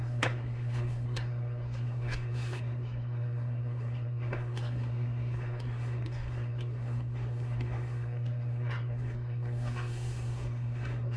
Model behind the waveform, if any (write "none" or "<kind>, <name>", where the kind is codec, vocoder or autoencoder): codec, SNAC